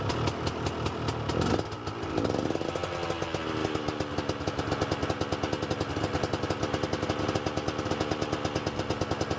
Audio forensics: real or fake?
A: real